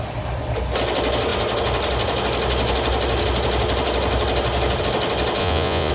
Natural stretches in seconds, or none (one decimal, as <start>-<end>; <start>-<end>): 0.0-5.4